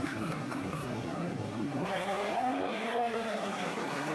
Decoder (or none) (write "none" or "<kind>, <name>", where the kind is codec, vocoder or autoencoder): codec, SNAC